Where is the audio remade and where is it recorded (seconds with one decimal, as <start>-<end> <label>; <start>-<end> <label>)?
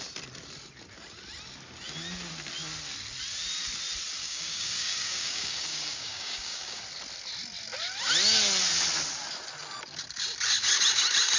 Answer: 0.0-4.2 recorded; 4.2-6.8 remade; 6.8-11.4 recorded